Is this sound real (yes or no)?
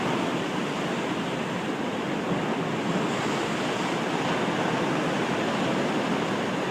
no